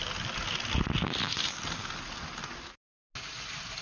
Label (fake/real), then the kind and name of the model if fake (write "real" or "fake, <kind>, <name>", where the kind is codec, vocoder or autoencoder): real